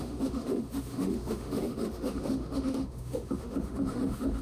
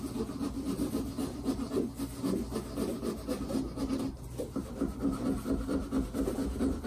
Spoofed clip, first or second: first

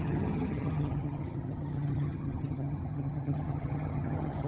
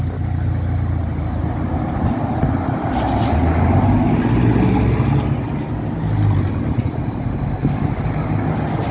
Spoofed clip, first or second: first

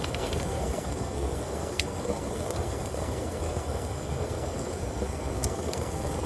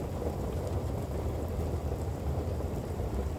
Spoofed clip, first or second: first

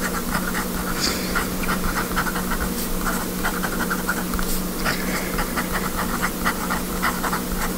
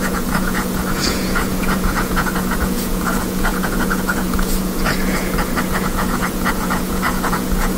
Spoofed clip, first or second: second